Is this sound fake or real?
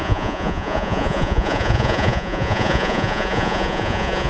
fake